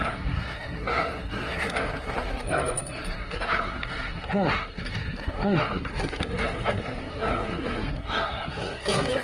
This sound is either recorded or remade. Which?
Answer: remade